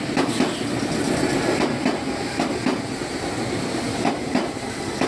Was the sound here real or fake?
real